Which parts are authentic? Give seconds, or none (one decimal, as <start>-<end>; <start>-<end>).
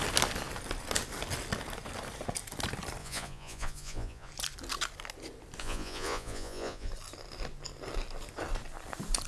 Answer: 0.0-3.0; 4.3-5.6; 6.9-9.3